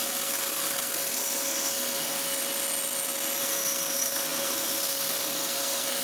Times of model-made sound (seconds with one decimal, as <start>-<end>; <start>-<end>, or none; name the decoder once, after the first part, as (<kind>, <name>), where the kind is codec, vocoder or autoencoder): 0.0-2.4 (codec, SNAC); 3.4-6.0